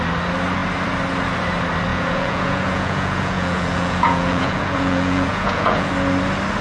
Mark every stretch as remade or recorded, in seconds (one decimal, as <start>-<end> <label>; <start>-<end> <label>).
0.0-1.9 recorded; 1.9-5.9 remade; 5.9-6.6 recorded